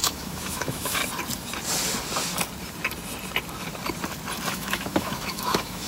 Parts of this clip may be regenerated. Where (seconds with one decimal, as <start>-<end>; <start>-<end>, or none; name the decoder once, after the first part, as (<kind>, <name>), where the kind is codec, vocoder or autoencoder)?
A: 0.0-1.0 (autoencoder, DAC-VAE); 4.5-5.9